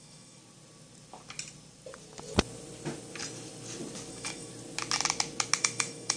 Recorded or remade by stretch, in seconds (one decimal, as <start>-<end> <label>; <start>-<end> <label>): 0.0-0.4 remade; 0.4-4.1 recorded; 4.1-4.5 remade; 4.5-5.6 recorded; 5.6-6.2 remade